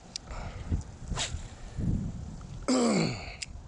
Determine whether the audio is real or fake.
real